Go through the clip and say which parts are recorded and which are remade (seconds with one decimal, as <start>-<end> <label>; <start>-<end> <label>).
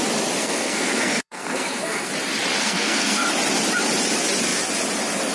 0.0-0.4 recorded; 0.4-2.1 remade; 2.1-2.6 recorded; 2.6-3.3 remade; 3.3-5.3 recorded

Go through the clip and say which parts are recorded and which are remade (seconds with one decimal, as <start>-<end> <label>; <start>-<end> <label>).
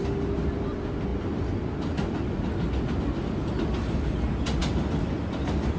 0.0-5.8 recorded